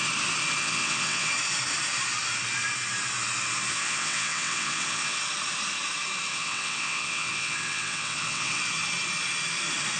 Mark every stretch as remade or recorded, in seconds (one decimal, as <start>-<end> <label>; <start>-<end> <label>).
0.0-0.6 recorded; 0.6-1.3 remade; 1.3-3.7 recorded; 3.7-5.2 remade; 5.2-6.3 recorded; 6.3-8.6 remade; 8.6-10.0 recorded